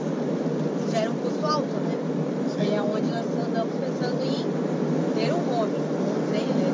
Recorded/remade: recorded